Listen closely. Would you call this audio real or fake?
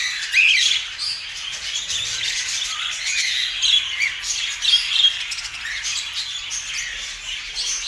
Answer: real